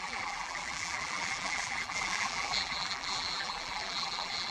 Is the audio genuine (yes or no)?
no